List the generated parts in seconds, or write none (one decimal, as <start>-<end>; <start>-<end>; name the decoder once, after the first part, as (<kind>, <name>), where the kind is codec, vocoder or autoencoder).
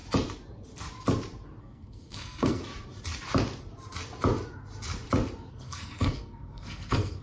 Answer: 1.6-2.6 (codec, SNAC); 5.5-7.2